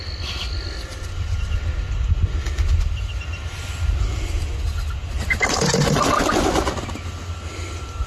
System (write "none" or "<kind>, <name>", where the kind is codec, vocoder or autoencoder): none